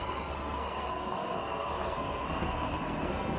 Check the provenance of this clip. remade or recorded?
remade